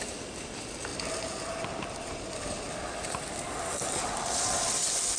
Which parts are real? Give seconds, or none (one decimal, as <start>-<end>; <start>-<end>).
0.0-5.2